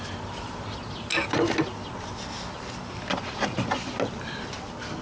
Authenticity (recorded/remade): recorded